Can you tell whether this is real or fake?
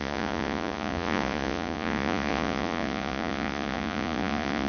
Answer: fake